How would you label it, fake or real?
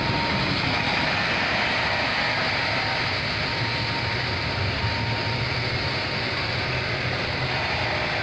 real